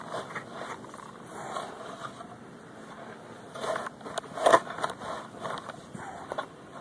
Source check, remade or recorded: recorded